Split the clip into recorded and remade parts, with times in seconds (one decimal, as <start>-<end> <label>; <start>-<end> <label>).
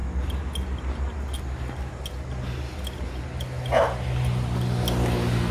0.0-5.5 recorded